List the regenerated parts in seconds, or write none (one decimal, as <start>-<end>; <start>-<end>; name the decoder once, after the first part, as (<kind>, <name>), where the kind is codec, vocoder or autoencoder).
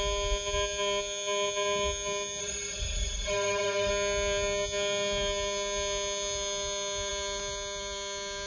2.4-3.9 (autoencoder, DAC-VAE)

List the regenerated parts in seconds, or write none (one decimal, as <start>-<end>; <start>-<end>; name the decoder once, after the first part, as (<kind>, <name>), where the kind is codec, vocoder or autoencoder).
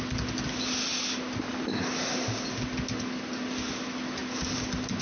none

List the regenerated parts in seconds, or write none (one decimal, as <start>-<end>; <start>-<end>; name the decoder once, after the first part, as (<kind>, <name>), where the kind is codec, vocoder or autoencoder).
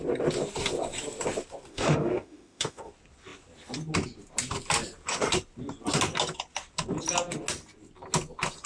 1.7-2.9 (autoencoder, DAC-VAE)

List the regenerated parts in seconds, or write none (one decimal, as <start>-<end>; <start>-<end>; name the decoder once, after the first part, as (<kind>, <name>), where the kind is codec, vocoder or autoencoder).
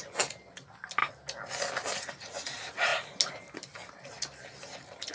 none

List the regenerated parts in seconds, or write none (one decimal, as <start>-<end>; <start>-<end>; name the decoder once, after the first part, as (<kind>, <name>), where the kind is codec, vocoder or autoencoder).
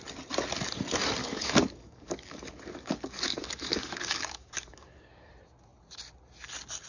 1.2-5.3 (codec, DAC)